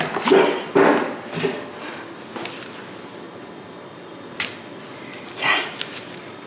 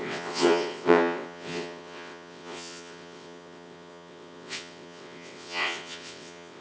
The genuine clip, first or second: first